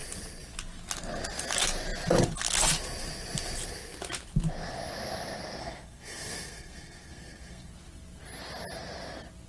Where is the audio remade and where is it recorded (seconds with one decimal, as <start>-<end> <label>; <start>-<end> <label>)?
0.0-5.6 recorded; 5.6-7.7 remade; 7.7-9.5 recorded